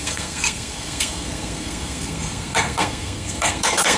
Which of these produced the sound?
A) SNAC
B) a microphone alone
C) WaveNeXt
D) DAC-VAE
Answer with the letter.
A